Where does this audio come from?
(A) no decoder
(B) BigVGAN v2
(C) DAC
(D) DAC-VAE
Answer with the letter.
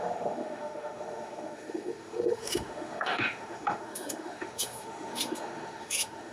D